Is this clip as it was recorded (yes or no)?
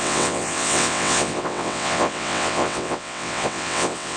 no